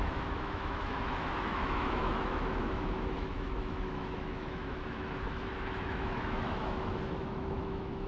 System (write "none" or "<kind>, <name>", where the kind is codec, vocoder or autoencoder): autoencoder, DAC-VAE